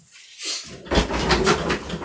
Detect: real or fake real